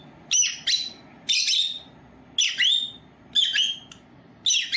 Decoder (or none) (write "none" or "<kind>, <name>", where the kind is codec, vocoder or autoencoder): none